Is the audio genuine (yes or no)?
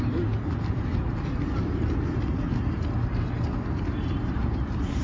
yes